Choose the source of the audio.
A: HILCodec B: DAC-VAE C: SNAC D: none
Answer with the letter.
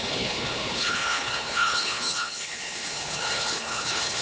A